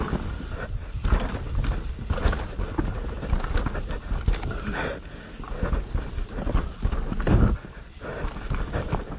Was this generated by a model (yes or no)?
no